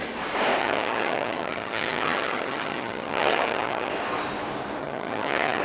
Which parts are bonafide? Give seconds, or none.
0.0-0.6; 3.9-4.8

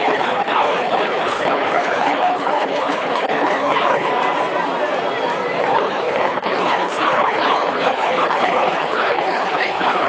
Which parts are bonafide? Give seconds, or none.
4.1-5.6